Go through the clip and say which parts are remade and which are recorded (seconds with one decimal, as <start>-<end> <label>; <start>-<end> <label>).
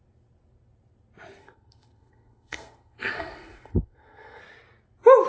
0.0-1.4 recorded; 1.4-4.4 remade; 4.4-5.3 recorded